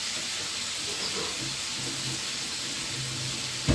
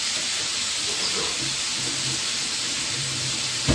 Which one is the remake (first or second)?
second